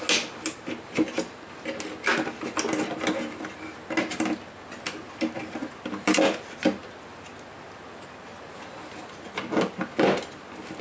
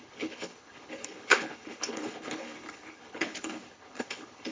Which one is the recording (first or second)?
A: first